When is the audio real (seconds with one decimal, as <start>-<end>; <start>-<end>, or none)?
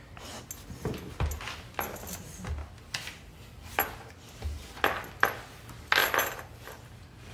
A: 0.0-7.3